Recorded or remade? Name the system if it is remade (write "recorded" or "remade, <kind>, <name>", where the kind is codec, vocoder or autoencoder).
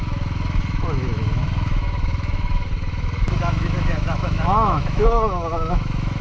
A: remade, autoencoder, DAC-VAE